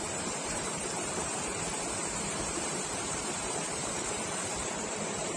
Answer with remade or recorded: remade